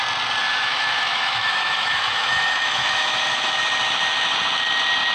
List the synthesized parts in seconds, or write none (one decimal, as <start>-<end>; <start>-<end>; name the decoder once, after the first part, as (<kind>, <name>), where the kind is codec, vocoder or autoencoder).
0.4-3.5 (autoencoder, DAC-VAE)